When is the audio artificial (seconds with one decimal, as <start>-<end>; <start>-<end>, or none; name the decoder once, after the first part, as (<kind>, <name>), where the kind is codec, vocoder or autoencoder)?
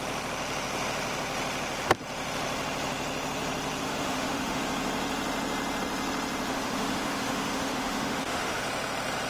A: 3.8-4.6 (autoencoder, DAC-VAE); 6.5-8.6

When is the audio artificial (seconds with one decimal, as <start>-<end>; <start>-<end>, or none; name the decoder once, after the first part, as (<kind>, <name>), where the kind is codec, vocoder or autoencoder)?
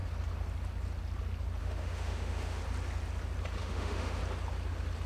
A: 1.6-2.6 (autoencoder, DAC-VAE); 3.6-4.2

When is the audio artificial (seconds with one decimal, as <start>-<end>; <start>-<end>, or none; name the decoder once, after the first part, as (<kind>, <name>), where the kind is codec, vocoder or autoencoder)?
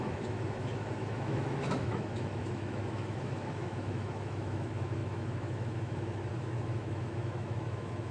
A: 0.0-8.1 (autoencoder, DAC-VAE)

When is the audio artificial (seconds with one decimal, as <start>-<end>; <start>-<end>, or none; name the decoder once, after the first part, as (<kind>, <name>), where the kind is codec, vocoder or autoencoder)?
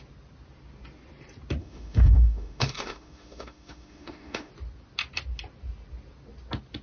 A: 1.6-4.5 (autoencoder, DAC-VAE)